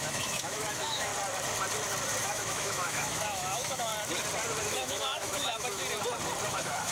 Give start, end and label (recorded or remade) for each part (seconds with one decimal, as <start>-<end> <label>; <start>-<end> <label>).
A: 0.0-1.1 remade; 1.1-2.2 recorded; 2.2-3.9 remade; 3.9-4.7 recorded; 4.7-5.8 remade; 5.8-6.5 recorded; 6.5-6.9 remade